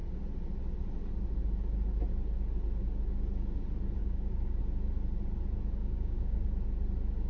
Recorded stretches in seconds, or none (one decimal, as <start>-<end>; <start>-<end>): 0.0-4.0; 4.6-5.8; 6.4-7.3